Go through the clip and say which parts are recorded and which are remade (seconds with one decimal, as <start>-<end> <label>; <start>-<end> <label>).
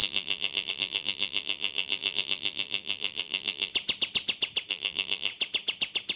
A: 0.0-3.7 remade; 3.7-4.7 recorded; 4.7-5.3 remade; 5.3-6.2 recorded